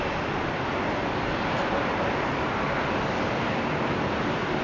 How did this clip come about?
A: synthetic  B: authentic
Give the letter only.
B